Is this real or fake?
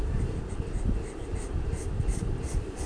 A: real